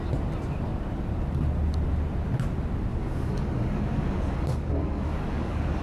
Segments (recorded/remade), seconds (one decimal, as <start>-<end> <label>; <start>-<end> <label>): 0.0-2.9 recorded; 2.9-5.8 remade